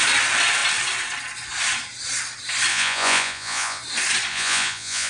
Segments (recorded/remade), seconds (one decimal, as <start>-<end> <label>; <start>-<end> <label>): 0.0-2.7 recorded; 2.7-3.8 remade; 3.8-4.3 recorded; 4.3-5.1 remade